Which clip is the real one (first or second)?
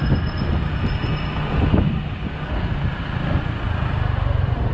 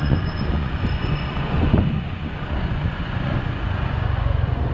first